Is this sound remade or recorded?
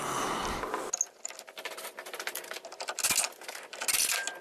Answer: recorded